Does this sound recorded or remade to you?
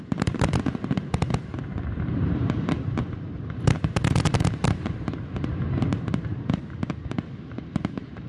remade